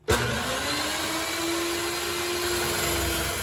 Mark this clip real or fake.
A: real